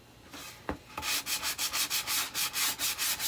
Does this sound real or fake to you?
real